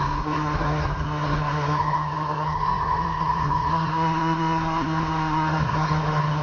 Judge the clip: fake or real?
fake